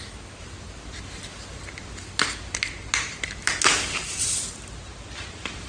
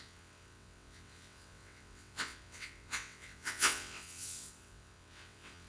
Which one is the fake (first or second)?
second